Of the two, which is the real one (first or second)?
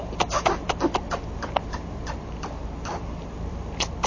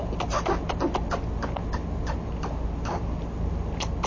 second